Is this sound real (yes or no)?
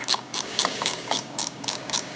no